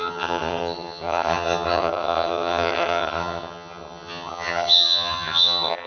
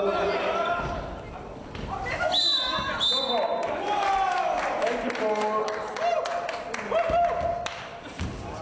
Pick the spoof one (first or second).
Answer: first